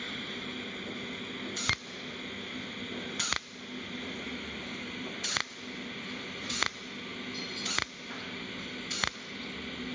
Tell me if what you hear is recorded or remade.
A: recorded